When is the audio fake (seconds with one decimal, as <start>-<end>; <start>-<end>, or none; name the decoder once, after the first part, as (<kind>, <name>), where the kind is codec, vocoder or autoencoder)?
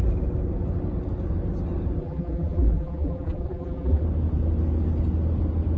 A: 2.0-4.0 (vocoder, BigVGAN v2)